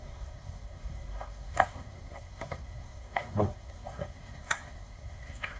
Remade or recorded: remade